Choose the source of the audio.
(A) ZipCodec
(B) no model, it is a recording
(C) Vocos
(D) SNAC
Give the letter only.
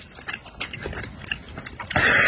B